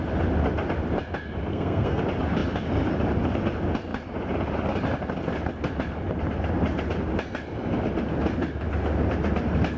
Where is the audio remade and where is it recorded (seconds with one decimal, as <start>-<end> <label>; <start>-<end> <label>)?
0.0-1.5 recorded; 1.5-2.0 remade; 2.0-9.8 recorded